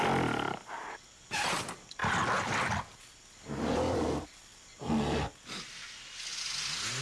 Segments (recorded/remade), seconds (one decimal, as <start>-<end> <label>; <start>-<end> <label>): 0.0-7.0 recorded